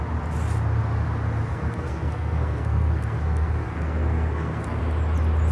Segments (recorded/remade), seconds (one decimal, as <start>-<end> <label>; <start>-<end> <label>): 0.0-1.5 recorded; 1.5-4.8 remade; 4.8-5.5 recorded